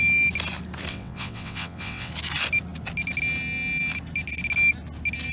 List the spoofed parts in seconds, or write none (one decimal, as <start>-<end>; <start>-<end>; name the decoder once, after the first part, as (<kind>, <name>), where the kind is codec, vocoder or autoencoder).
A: 0.9-2.1 (vocoder, WaveNeXt)